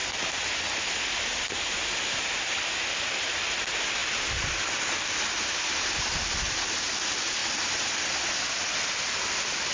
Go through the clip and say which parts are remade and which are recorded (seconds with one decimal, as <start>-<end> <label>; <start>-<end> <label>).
0.0-1.3 recorded; 1.3-2.4 remade; 2.4-9.7 recorded